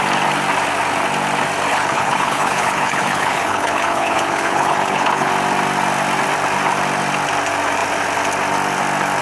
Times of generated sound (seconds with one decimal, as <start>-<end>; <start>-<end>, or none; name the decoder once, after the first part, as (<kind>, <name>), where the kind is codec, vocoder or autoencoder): 1.7-5.3 (codec, HILCodec)